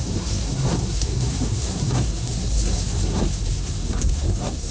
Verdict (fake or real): fake